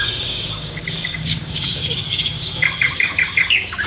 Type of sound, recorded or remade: remade